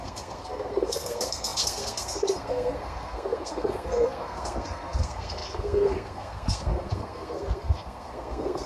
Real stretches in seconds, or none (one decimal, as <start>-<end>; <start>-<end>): none